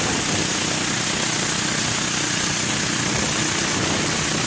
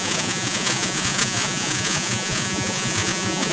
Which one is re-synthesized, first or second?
second